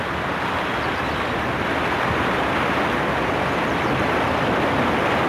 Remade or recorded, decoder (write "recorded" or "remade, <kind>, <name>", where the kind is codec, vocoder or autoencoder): recorded